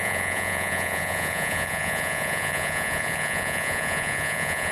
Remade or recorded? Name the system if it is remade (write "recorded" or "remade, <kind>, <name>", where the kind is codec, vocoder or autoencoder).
remade, vocoder, Vocos